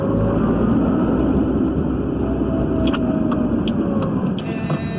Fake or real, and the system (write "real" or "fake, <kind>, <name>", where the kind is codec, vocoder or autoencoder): real